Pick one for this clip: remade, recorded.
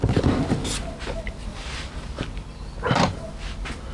recorded